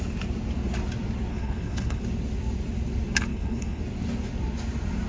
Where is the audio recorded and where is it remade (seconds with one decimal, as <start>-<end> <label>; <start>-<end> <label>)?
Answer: 0.0-1.3 recorded; 1.3-2.0 remade; 2.0-3.3 recorded; 3.3-3.8 remade; 3.8-5.1 recorded